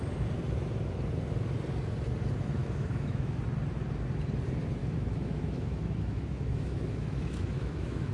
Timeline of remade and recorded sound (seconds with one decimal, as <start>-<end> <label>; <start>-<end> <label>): 0.0-2.6 recorded; 2.6-3.4 remade; 3.4-4.8 recorded; 4.8-8.1 remade